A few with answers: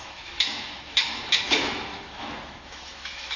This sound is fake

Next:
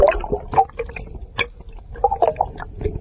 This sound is real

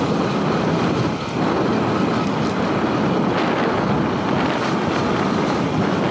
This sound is real